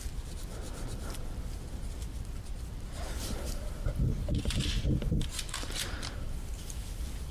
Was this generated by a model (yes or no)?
yes